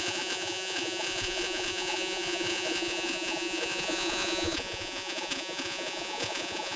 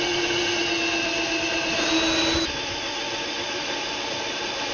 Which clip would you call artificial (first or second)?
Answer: first